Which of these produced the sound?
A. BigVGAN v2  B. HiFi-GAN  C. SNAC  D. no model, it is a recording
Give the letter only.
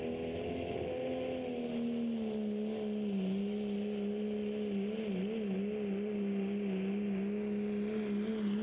D